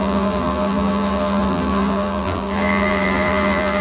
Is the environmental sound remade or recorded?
remade